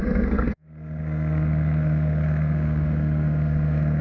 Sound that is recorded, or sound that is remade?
remade